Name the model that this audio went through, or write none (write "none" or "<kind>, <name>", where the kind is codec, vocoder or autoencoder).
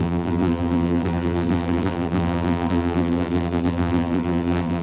vocoder, BigVGAN v2